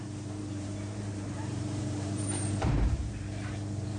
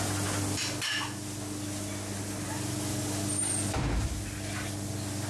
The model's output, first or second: first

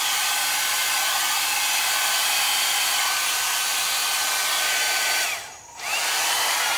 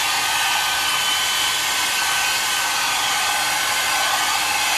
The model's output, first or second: first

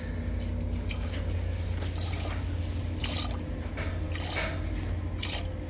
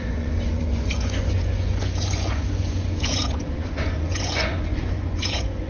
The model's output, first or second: second